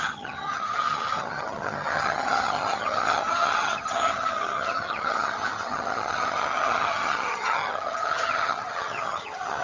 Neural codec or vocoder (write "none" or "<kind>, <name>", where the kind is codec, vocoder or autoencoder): vocoder, HiFi-GAN